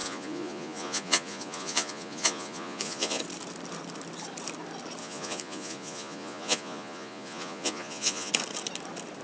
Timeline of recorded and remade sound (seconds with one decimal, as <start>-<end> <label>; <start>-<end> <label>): 0.0-3.2 remade; 3.2-5.0 recorded; 5.0-8.3 remade; 8.3-9.2 recorded